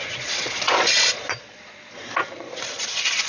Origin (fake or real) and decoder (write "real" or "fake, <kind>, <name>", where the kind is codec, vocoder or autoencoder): fake, vocoder, Vocos